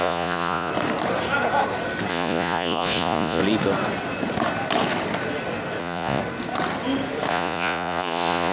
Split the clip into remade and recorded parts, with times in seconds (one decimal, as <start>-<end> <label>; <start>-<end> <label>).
0.0-0.7 remade; 0.7-2.1 recorded; 2.1-3.4 remade; 3.4-5.8 recorded; 5.8-6.2 remade; 6.2-7.3 recorded; 7.3-8.5 remade